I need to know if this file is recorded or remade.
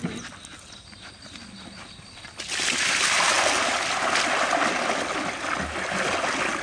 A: recorded